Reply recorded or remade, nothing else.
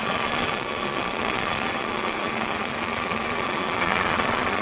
remade